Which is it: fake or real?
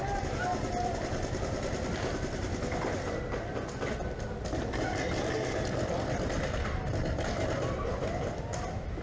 real